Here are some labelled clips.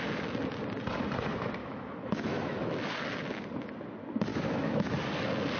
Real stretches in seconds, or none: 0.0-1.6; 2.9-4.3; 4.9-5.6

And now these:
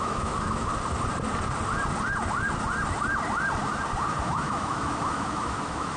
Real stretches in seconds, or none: 0.7-4.2

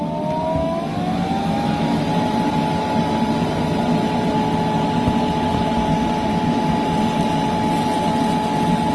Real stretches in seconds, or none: 0.0-0.6; 2.0-8.9

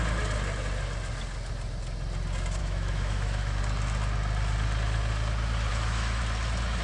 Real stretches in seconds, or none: 0.0-2.6; 3.6-5.7; 6.2-6.8

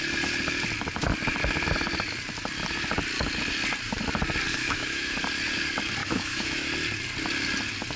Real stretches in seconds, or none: 0.0-4.5; 5.2-6.0; 6.7-8.0